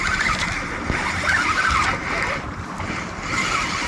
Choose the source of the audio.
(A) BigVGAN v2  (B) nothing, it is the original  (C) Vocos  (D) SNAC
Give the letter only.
B